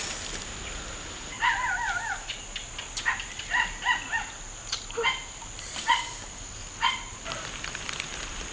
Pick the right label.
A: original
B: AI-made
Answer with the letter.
A